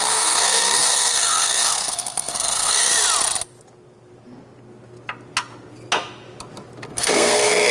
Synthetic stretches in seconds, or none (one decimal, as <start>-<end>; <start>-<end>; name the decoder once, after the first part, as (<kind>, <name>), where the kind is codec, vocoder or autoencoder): 0.0-2.9 (codec, SNAC); 6.9-7.7